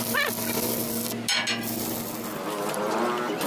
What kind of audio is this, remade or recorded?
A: recorded